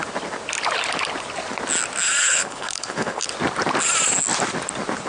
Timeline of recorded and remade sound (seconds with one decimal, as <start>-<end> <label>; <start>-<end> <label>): 0.0-2.2 recorded; 2.2-3.2 remade; 3.2-5.1 recorded